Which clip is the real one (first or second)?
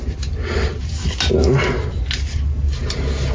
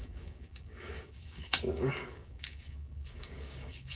first